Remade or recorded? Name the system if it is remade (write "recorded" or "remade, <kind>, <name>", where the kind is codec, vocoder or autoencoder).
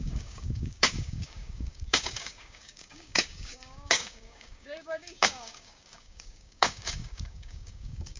remade, codec, DAC